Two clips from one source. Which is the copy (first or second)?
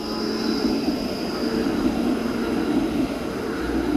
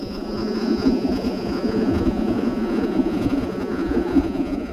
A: second